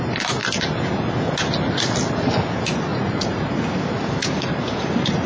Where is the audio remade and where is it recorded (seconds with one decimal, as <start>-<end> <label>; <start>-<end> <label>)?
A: 0.0-2.9 recorded; 2.9-3.5 remade; 3.5-4.2 recorded; 4.2-5.3 remade

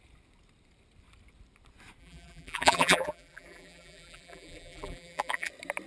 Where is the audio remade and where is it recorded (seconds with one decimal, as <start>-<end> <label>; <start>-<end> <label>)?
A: 0.0-2.0 recorded; 2.0-5.5 remade; 5.5-5.9 recorded

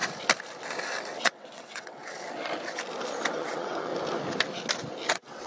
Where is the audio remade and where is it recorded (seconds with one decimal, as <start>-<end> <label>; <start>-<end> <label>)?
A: 0.0-1.2 recorded; 1.2-2.0 remade; 2.0-3.3 recorded; 3.3-3.9 remade; 3.9-5.1 recorded; 5.1-5.5 remade

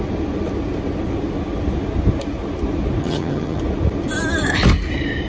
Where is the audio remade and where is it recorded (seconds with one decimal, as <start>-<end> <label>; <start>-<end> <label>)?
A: 0.0-3.0 recorded; 3.0-3.6 remade; 3.6-5.3 recorded

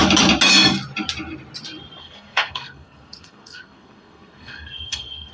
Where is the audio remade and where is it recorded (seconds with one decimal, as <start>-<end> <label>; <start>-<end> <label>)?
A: 0.0-2.0 recorded; 2.0-5.3 remade